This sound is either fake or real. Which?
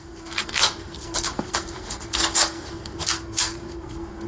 fake